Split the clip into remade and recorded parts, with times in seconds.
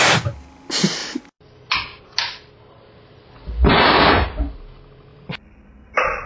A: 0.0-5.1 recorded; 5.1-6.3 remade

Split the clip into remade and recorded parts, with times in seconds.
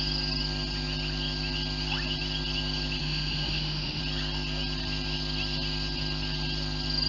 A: 0.0-3.0 recorded; 3.0-4.0 remade; 4.0-7.1 recorded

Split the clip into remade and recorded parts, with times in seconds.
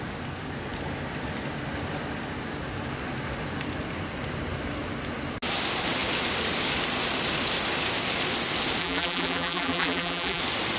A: 0.0-8.8 recorded; 8.8-10.4 remade; 10.4-10.8 recorded